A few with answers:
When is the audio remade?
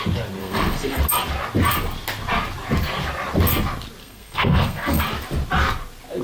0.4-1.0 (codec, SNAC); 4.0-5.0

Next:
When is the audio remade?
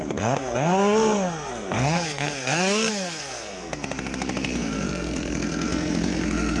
0.0-6.6 (codec, SNAC)